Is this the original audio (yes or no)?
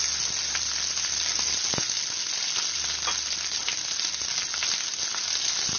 yes